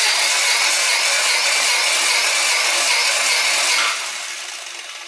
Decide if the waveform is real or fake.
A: real